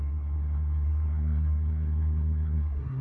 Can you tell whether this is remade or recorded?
remade